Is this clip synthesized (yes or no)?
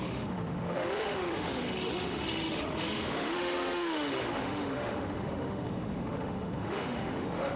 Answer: yes